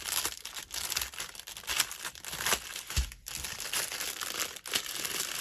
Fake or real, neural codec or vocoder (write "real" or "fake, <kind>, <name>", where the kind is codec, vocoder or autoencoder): real